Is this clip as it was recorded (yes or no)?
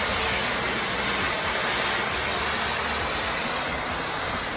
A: yes